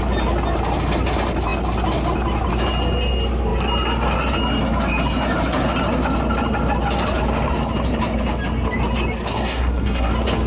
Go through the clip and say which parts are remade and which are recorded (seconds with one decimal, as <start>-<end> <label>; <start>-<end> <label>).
0.0-9.3 recorded; 9.3-10.1 remade; 10.1-10.5 recorded